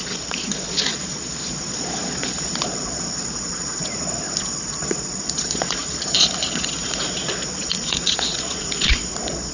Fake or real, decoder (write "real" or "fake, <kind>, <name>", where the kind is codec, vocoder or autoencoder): fake, vocoder, Vocos